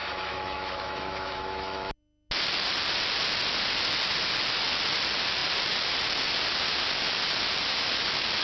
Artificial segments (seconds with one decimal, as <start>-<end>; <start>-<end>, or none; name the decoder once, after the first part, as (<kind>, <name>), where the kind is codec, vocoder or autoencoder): 0.0-2.3 (autoencoder, DAC-VAE)